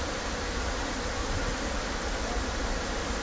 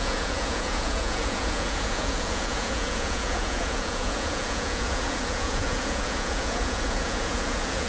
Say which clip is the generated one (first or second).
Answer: second